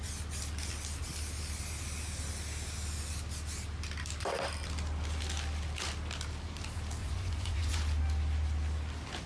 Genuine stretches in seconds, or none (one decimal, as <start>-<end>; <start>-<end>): 0.0-7.0; 7.8-9.3